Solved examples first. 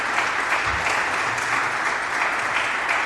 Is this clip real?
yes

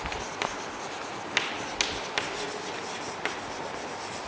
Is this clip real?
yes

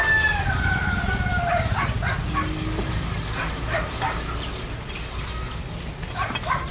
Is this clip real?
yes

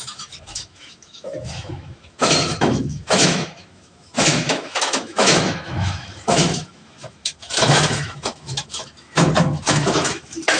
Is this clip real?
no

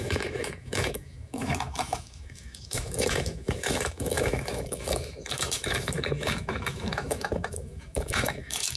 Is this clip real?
no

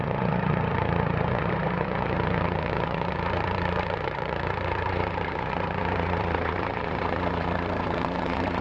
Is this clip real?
no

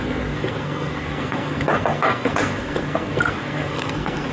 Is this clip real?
no